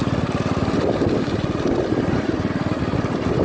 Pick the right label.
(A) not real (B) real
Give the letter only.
B